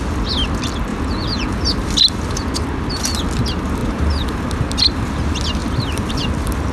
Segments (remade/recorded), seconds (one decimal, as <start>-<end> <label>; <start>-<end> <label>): 0.0-0.9 recorded; 0.9-1.6 remade; 1.6-6.7 recorded